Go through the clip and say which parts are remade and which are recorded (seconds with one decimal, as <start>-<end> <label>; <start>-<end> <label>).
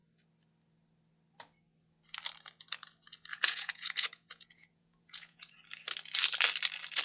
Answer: 0.0-3.3 recorded; 3.3-5.5 remade; 5.5-7.0 recorded